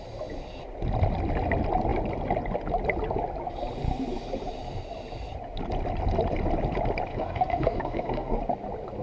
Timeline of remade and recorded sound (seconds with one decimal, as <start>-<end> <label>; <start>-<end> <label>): 0.0-7.1 recorded; 7.1-8.4 remade; 8.4-9.0 recorded